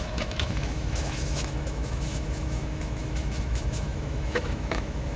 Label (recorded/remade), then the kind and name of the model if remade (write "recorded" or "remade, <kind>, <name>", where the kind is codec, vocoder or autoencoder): remade, autoencoder, DAC-VAE